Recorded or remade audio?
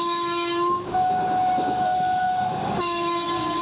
remade